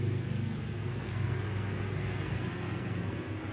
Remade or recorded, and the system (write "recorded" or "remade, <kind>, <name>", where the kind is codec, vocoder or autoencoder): remade, codec, SNAC